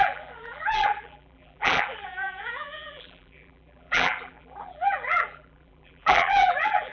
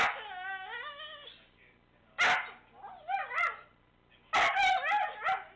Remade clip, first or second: first